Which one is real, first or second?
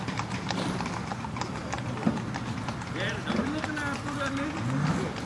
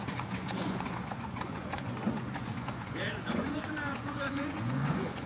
first